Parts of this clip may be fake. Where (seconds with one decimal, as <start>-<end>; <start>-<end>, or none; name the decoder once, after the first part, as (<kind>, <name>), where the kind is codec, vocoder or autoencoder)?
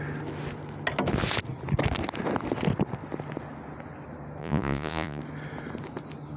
4.4-5.2 (vocoder, Vocos)